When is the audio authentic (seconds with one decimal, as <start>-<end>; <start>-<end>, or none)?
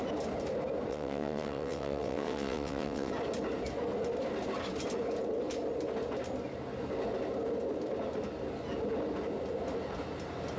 0.0-0.9; 3.1-10.6